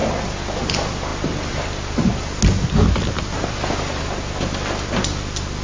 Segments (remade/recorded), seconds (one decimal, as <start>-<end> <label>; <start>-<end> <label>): 0.0-5.6 recorded